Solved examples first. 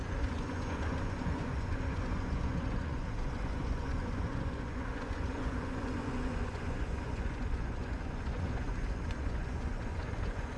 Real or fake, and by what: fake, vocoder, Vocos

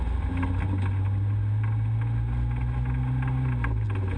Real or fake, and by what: real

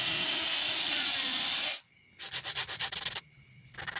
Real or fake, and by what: real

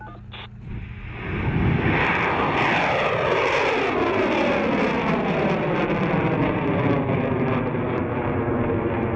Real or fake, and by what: real